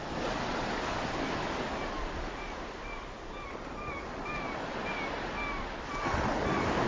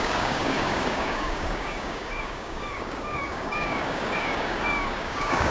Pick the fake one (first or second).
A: second